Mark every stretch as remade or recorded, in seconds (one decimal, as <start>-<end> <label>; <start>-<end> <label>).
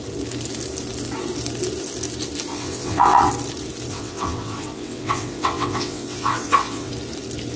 0.0-2.5 recorded; 2.5-3.3 remade; 3.3-3.9 recorded; 3.9-6.9 remade; 6.9-7.6 recorded